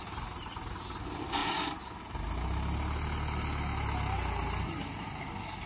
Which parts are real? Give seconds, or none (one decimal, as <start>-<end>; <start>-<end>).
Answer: 0.0-5.7